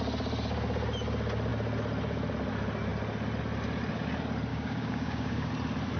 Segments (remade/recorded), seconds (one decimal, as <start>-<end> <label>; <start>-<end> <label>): 0.0-4.5 recorded; 4.5-5.5 remade; 5.5-6.0 recorded